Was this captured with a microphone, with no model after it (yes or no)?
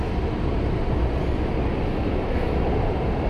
yes